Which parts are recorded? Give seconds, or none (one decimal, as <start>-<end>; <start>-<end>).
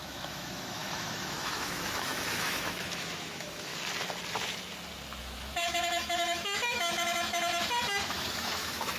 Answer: 3.7-5.2; 7.5-8.0